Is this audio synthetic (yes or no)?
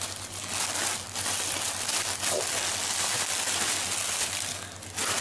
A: no